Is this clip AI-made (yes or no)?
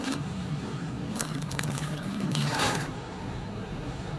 yes